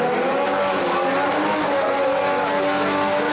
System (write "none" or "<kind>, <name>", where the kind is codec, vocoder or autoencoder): none